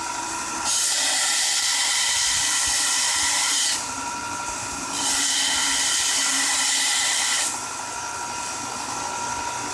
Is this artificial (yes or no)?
yes